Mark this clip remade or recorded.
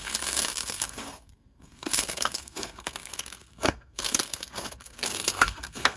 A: remade